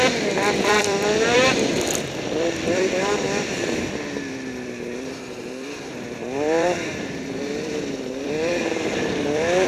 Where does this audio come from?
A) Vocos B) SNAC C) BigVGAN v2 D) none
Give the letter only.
C